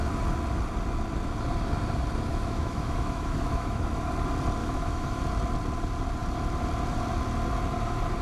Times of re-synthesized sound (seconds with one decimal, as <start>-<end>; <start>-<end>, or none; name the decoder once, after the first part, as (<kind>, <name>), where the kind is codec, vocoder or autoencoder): 2.3-4.1 (autoencoder, DAC-VAE); 4.6-5.2